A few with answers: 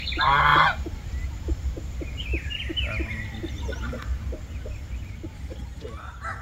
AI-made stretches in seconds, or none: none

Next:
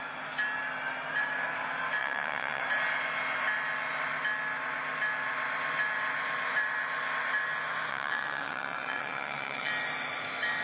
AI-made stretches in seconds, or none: 2.0-2.6 (vocoder, WaveNeXt); 7.9-9.7